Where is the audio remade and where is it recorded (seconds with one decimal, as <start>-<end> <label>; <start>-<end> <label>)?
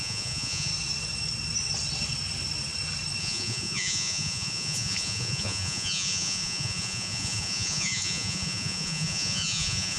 0.0-0.7 remade; 0.7-3.2 recorded; 3.2-10.0 remade